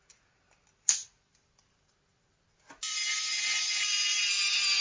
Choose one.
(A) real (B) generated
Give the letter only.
A